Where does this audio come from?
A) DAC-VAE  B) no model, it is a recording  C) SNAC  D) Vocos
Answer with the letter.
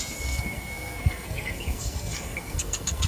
C